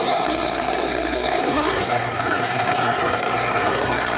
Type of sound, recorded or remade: remade